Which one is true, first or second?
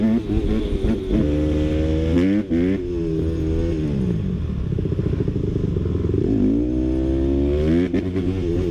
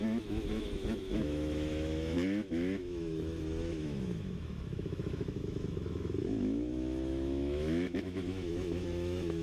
first